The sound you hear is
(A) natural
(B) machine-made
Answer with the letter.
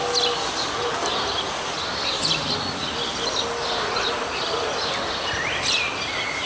A